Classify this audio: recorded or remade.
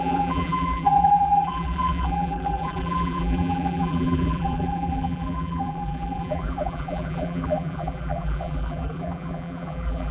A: remade